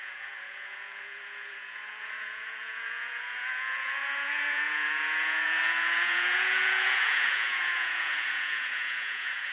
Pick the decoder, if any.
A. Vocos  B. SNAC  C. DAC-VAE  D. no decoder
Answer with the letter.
A